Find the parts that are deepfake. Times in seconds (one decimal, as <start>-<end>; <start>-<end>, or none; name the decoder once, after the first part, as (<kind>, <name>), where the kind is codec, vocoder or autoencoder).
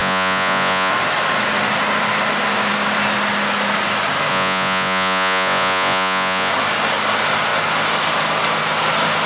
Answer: 0.0-0.9 (vocoder, Vocos); 4.3-6.5